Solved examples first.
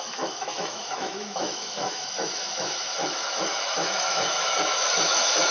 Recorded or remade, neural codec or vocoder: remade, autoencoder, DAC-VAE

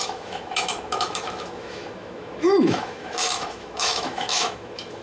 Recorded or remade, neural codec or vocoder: remade, autoencoder, DAC-VAE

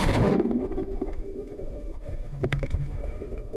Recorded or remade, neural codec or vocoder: remade, autoencoder, DAC-VAE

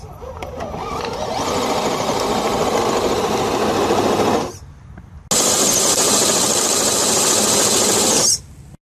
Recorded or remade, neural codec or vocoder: recorded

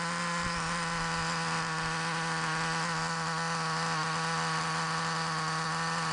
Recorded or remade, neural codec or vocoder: recorded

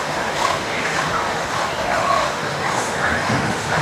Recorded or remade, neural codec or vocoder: remade, autoencoder, DAC-VAE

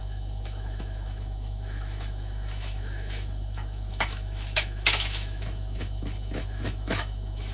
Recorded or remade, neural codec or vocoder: remade, autoencoder, DAC-VAE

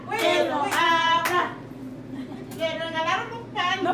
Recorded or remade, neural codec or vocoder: recorded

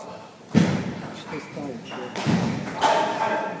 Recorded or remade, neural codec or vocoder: recorded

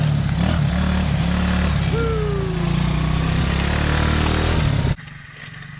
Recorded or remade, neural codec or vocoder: recorded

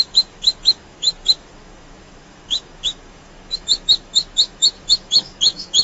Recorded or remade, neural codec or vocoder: remade, autoencoder, DAC-VAE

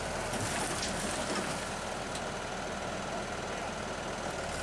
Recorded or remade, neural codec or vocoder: recorded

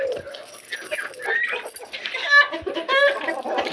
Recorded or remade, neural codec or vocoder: recorded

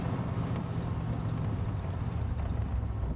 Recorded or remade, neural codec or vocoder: recorded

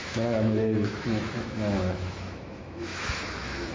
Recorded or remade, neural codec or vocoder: remade, autoencoder, DAC-VAE